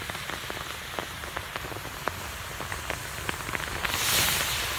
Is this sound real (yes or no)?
yes